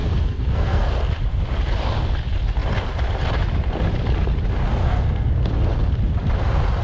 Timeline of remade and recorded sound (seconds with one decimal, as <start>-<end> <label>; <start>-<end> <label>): 0.0-0.9 remade; 0.9-4.8 recorded; 4.8-5.3 remade; 5.3-6.8 recorded